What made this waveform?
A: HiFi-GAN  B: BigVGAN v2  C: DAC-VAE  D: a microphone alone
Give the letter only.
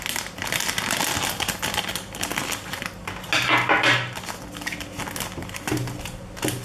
D